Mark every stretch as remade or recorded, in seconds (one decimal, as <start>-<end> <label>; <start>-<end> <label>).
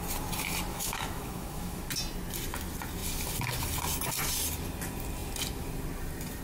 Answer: 0.0-0.7 recorded; 0.7-1.8 remade; 1.8-6.4 recorded